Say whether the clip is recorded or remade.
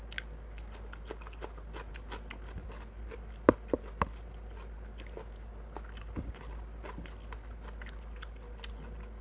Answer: recorded